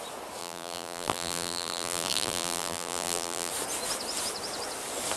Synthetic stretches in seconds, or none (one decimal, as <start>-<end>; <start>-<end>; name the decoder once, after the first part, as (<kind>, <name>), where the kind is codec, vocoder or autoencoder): 0.4-3.5 (vocoder, BigVGAN v2)